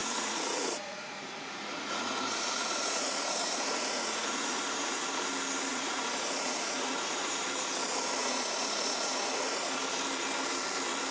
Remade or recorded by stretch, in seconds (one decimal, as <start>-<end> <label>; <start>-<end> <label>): 0.0-5.2 remade; 5.2-5.7 recorded; 5.7-7.3 remade; 7.3-8.2 recorded; 8.2-9.8 remade; 9.8-11.1 recorded